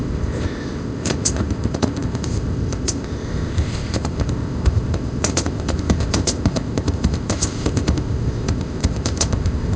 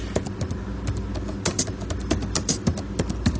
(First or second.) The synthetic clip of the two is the first